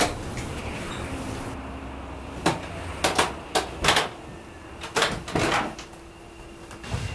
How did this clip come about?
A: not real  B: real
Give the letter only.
B